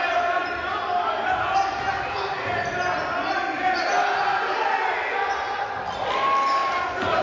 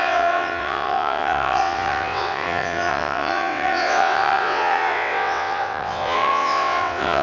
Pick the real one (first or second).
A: first